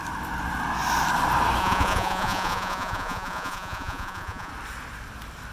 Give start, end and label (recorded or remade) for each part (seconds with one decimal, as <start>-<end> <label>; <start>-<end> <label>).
0.0-1.6 recorded; 1.6-4.5 remade; 4.5-5.5 recorded